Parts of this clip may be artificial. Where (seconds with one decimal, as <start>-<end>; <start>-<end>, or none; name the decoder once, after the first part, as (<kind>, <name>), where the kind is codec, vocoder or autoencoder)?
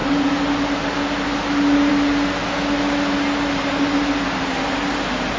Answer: none